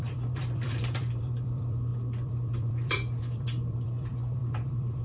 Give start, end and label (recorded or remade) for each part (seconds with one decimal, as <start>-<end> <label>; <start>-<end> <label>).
0.0-5.0 remade